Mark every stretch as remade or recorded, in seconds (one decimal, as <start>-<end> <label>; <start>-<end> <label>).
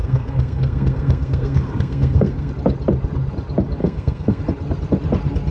0.0-2.5 remade; 2.5-3.8 recorded; 3.8-4.4 remade; 4.4-5.5 recorded